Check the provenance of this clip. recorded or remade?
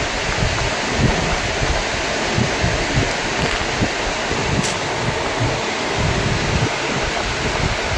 recorded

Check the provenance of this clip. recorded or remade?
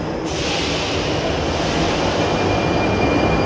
recorded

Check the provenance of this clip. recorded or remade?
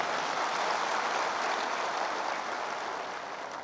recorded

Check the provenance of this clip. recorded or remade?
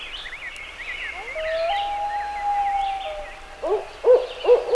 recorded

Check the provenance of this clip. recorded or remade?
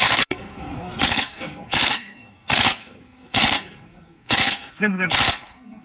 remade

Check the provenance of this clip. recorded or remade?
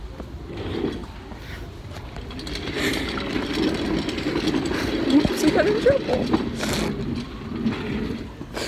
recorded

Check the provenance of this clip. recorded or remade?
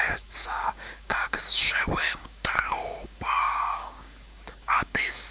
remade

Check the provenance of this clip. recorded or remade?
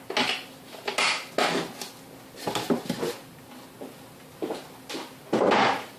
recorded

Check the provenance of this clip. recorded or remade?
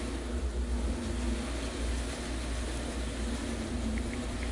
recorded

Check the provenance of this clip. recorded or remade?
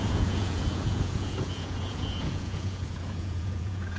remade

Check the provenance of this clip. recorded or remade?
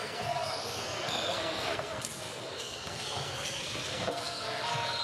remade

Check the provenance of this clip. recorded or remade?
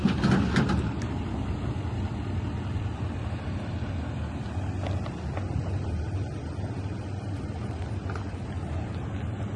recorded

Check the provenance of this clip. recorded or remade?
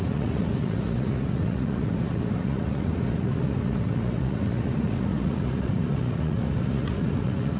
remade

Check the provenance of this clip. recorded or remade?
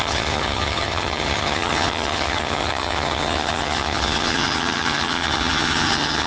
remade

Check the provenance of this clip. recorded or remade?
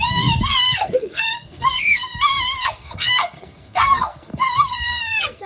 remade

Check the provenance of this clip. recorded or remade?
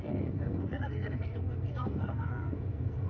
remade